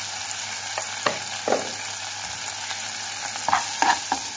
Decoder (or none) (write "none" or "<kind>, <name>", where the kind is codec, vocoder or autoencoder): none